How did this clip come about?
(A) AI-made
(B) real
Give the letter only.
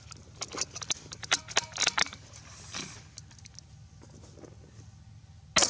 B